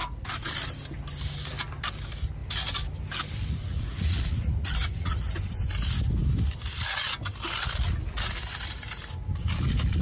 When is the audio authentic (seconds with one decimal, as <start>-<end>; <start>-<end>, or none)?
0.5-3.6; 5.2-10.0